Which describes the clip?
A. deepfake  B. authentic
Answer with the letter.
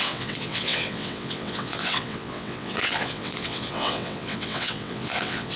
A